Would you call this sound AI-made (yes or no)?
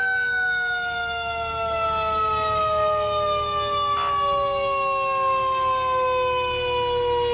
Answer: no